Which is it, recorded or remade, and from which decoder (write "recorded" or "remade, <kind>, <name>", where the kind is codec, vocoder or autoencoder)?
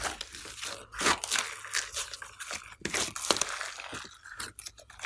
recorded